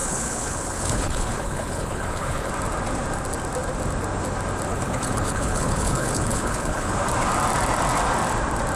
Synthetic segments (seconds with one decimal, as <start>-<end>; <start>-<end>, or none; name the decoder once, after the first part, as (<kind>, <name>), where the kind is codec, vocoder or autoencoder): 0.0-2.5 (codec, HILCodec); 4.7-6.9